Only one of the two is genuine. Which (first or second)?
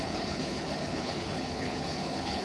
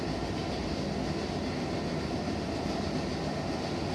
second